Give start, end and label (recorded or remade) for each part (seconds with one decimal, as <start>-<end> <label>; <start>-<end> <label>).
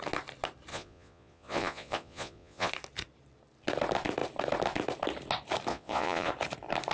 0.0-0.7 recorded; 0.7-2.7 remade; 2.7-5.7 recorded; 5.7-6.3 remade; 6.3-6.9 recorded